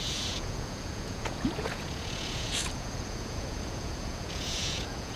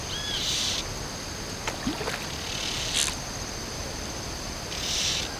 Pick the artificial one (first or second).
first